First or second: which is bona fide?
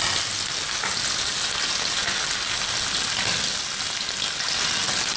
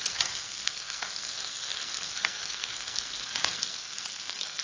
first